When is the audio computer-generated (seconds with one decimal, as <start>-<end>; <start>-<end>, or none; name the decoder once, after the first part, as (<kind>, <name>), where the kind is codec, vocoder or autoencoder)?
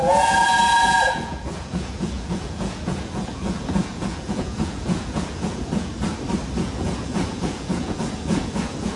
0.0-5.9 (vocoder, Vocos); 6.6-9.0